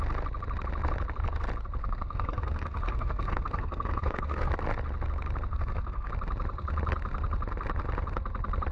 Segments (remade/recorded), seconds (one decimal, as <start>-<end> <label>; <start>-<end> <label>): 0.0-1.8 recorded; 1.8-4.5 remade; 4.5-5.5 recorded; 5.5-6.1 remade; 6.1-8.7 recorded